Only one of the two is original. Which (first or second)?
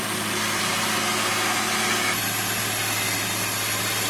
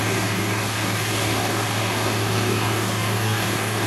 first